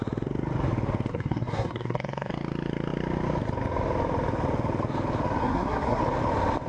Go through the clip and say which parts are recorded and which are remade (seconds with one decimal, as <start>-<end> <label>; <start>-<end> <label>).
0.0-1.1 recorded; 1.1-2.3 remade; 2.3-5.4 recorded; 5.4-6.0 remade; 6.0-6.7 recorded